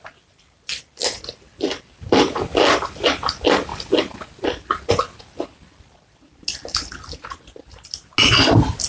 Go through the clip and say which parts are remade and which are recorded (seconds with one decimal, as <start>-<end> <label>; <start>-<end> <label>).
0.0-8.9 recorded